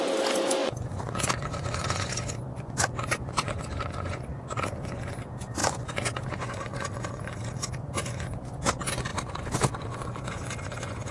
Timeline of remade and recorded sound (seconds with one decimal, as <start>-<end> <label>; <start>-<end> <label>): 0.0-11.1 remade